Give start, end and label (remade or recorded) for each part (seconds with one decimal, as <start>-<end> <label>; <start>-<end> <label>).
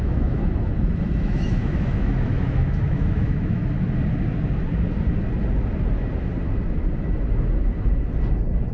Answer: 0.0-0.4 remade; 0.4-1.2 recorded; 1.2-3.6 remade; 3.6-8.7 recorded